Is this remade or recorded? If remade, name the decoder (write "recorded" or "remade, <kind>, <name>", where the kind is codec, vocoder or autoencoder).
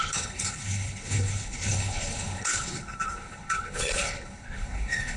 remade, codec, HILCodec